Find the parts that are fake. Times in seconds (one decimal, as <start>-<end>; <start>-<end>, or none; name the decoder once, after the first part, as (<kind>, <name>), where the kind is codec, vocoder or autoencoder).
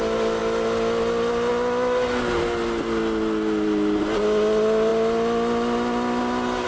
none